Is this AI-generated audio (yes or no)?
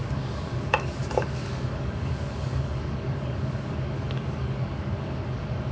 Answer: yes